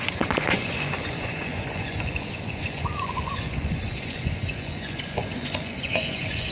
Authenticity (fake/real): fake